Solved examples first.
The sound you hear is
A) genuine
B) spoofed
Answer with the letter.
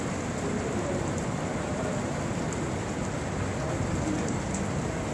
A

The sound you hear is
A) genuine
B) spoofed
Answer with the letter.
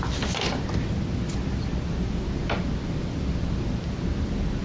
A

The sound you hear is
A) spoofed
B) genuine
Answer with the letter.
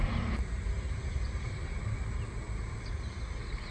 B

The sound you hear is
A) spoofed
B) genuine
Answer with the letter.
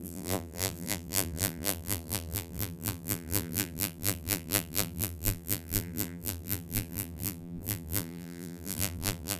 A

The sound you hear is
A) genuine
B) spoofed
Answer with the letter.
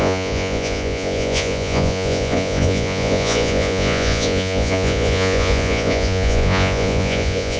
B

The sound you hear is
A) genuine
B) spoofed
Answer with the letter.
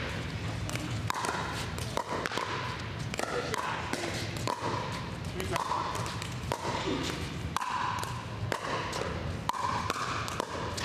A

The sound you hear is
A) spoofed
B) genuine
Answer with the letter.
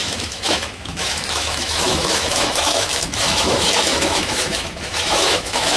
A